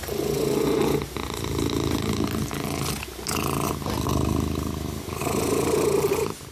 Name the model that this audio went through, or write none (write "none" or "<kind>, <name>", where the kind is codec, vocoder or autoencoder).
none